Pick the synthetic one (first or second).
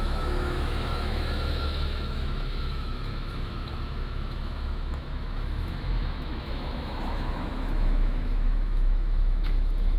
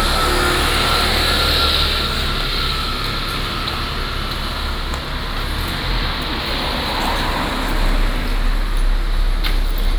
first